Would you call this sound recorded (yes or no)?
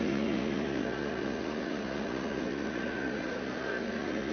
no